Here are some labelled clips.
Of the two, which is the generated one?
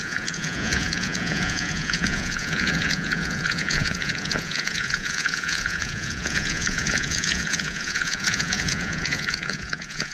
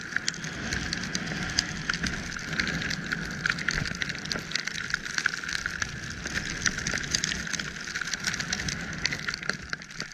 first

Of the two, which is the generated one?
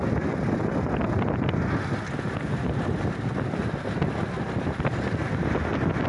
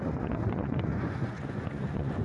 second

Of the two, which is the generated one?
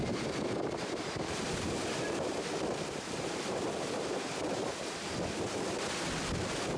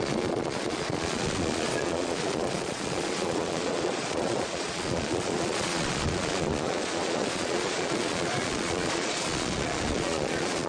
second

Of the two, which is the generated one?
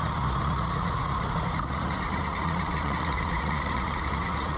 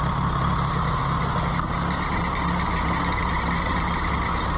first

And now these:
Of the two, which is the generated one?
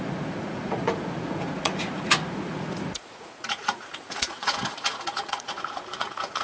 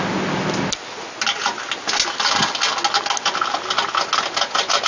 first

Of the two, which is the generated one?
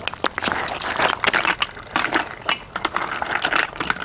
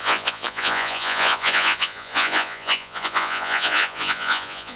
second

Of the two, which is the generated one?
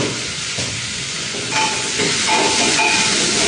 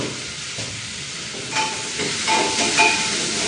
first